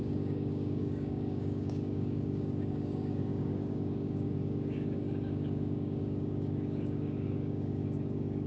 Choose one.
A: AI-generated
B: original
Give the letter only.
A